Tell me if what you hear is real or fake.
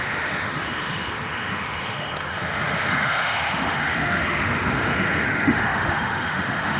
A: fake